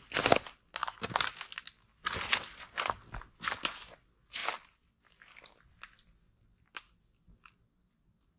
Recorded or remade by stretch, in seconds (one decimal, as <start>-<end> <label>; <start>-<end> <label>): 0.0-8.4 recorded